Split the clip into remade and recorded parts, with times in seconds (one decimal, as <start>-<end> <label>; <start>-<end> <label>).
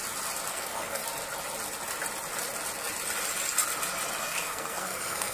0.0-0.5 recorded; 0.5-1.0 remade; 1.0-4.2 recorded; 4.2-5.3 remade